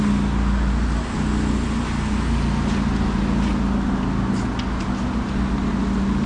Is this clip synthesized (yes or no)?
no